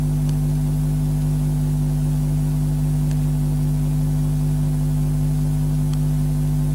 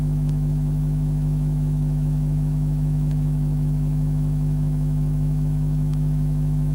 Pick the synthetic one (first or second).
second